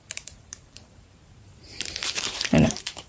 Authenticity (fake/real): fake